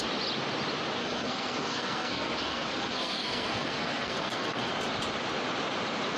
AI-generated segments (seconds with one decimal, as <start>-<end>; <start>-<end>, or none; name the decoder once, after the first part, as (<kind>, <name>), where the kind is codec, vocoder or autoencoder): 1.0-4.7 (codec, SNAC)